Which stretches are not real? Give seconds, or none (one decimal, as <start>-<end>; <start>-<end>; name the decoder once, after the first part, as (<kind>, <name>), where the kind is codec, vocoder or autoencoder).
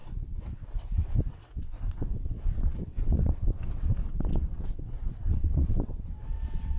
0.0-6.8 (vocoder, WaveNeXt)